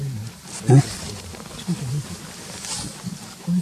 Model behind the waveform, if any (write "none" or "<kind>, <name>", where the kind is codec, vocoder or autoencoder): none